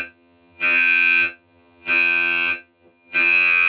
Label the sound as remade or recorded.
remade